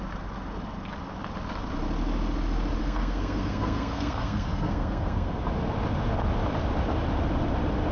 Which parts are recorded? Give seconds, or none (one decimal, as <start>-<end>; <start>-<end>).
0.0-2.8; 5.4-7.9